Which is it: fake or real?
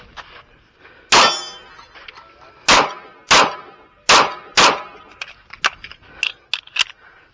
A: real